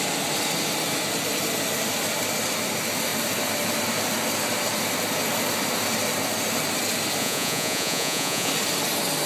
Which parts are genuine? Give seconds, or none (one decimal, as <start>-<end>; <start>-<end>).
0.0-7.2; 8.5-9.3